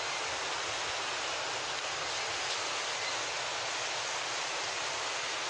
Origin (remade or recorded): recorded